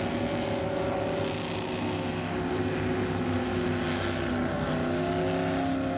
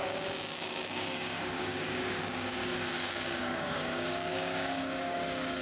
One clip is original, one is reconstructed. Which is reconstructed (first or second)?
second